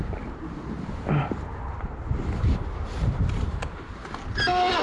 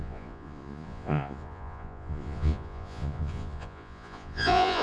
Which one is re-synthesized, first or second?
second